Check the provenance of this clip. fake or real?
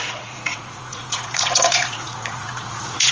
fake